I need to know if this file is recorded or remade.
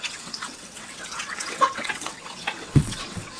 remade